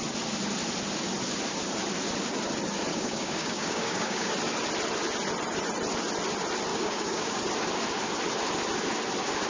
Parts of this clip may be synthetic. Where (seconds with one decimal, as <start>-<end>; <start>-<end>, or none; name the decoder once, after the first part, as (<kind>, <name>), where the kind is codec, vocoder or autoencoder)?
2.9-4.3 (codec, DAC); 6.7-7.4